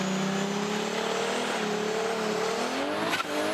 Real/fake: real